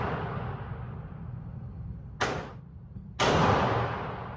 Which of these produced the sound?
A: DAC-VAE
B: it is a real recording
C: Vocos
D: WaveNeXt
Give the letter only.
B